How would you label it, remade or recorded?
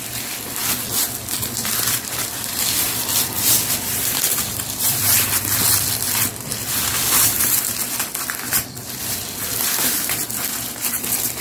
remade